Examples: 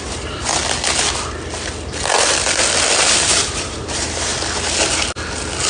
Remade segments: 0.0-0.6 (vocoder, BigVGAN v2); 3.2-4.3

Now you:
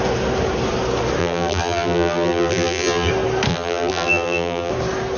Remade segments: 1.2-3.1 (vocoder, BigVGAN v2); 3.5-4.7

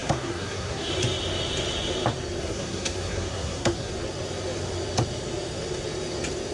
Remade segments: 0.0-0.9 (codec, SNAC); 2.4-3.9

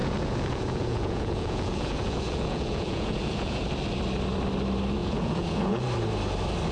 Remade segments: 0.0-3.6 (vocoder, Vocos); 5.0-5.8